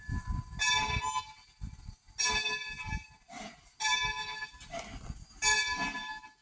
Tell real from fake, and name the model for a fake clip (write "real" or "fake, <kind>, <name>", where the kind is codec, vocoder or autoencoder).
real